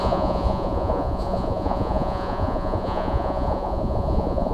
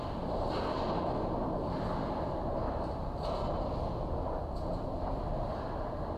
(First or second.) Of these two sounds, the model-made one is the first